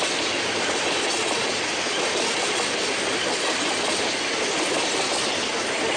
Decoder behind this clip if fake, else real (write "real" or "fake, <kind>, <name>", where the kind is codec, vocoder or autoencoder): real